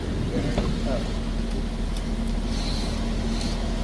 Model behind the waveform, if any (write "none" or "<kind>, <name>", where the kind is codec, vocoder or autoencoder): none